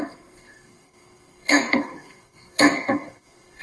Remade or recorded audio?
remade